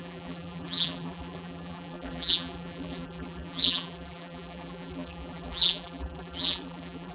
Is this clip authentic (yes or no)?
no